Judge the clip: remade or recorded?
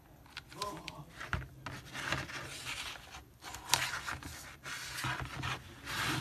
recorded